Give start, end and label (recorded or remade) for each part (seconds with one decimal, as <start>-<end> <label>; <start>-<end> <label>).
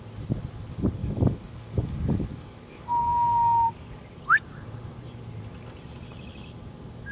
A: 0.0-1.0 recorded; 1.0-4.2 remade; 4.2-7.1 recorded